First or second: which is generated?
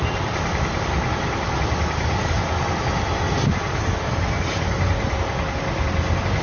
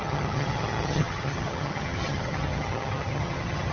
second